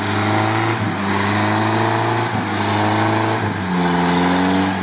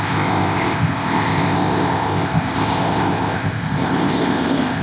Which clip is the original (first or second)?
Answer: first